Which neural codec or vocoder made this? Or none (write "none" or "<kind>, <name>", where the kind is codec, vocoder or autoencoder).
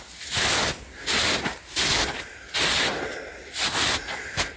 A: none